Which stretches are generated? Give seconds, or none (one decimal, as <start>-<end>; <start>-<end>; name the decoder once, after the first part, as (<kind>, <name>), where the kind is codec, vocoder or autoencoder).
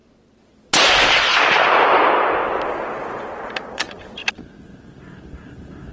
3.3-4.2 (vocoder, Vocos)